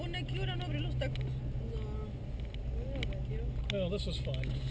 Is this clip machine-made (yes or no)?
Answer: no